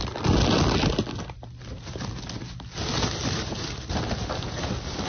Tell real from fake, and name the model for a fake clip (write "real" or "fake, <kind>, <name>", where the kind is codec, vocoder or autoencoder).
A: real